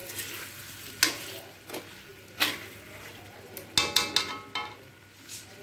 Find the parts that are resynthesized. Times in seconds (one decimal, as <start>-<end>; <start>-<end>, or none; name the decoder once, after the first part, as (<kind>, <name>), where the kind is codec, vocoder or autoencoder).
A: none